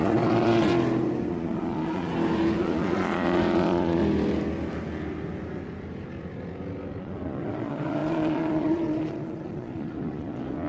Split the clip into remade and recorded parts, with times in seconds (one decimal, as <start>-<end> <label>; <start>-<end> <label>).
0.0-0.7 remade; 0.7-1.3 recorded; 1.3-2.1 remade; 2.1-2.6 recorded; 2.6-4.0 remade; 4.0-7.0 recorded; 7.0-10.7 remade